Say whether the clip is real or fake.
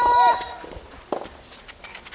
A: real